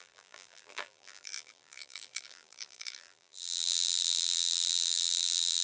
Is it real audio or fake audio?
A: fake